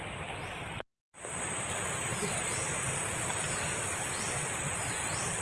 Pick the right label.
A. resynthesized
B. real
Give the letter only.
B